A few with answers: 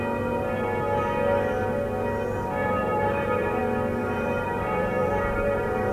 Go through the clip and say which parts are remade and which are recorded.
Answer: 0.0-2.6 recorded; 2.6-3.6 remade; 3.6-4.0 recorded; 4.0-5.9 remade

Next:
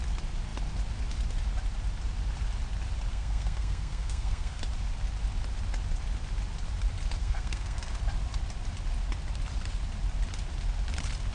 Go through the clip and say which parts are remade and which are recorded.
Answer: 0.0-3.1 recorded; 3.1-4.6 remade; 4.6-7.2 recorded; 7.2-8.0 remade; 8.0-11.3 recorded

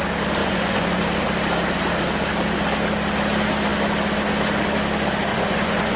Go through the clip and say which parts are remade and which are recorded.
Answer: 0.0-0.4 recorded; 0.4-1.0 remade; 1.0-5.3 recorded; 5.3-6.0 remade

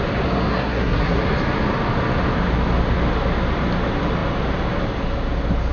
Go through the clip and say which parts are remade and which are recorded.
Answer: 0.0-0.5 recorded; 0.5-1.2 remade; 1.2-5.7 recorded